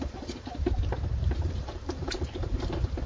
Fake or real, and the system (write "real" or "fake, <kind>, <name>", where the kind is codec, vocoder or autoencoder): fake, vocoder, BigVGAN v2